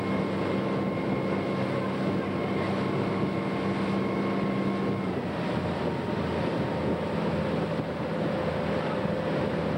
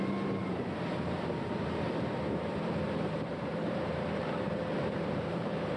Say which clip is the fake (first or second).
second